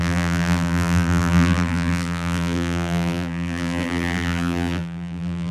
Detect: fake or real fake